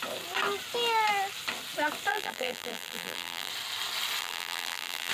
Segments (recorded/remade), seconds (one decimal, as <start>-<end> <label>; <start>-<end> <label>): 0.0-2.1 recorded; 2.1-3.5 remade; 3.5-4.2 recorded; 4.2-5.1 remade